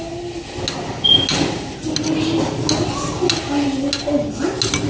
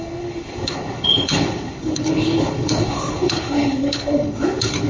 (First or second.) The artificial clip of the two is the second